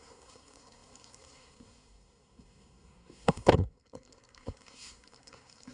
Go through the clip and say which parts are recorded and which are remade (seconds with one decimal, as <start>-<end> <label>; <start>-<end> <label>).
0.0-5.7 remade